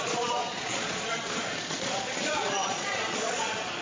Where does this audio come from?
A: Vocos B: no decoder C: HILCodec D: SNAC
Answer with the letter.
A